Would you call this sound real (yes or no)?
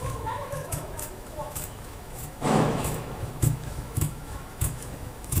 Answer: no